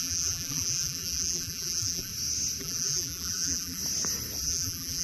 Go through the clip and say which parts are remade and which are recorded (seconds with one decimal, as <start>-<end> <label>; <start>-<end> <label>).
0.0-2.1 remade; 2.1-2.6 recorded; 2.6-3.8 remade; 3.8-4.4 recorded; 4.4-5.0 remade